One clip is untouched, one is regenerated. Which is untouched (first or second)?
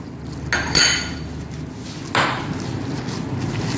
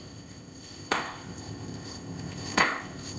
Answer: first